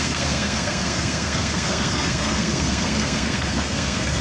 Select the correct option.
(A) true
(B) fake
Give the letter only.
B